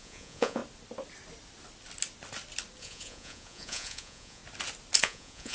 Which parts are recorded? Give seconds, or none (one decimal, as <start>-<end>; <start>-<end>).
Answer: 0.6-2.8; 4.4-5.0